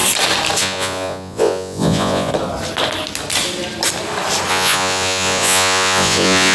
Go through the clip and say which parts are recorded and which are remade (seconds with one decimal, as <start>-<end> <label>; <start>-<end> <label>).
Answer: 0.0-0.6 recorded; 0.6-2.3 remade; 2.3-4.5 recorded; 4.5-6.5 remade